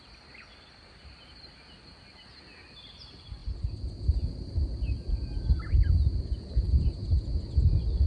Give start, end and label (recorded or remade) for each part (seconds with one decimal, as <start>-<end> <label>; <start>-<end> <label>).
0.0-8.1 recorded